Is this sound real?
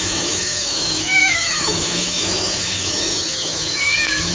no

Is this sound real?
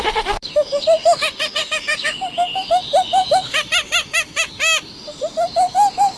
no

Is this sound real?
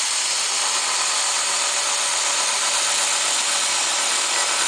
yes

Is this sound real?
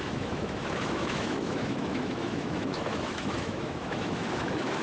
no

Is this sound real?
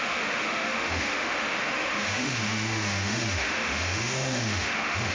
no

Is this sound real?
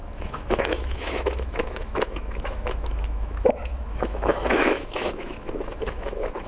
no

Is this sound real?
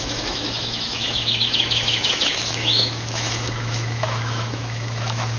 no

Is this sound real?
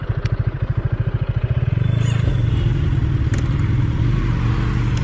yes